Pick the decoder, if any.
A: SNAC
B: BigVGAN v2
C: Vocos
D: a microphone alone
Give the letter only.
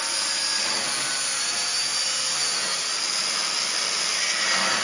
D